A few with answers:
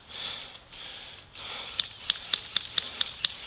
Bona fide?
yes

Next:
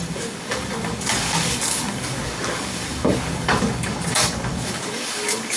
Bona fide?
no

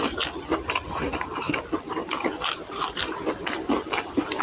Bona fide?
yes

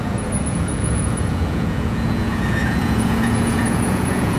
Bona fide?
no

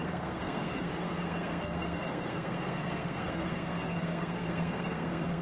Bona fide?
no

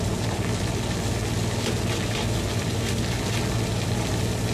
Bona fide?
yes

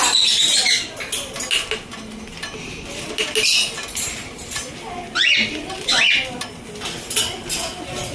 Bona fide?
yes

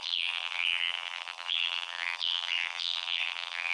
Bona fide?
no